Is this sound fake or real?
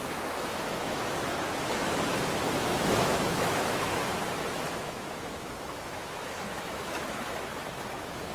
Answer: fake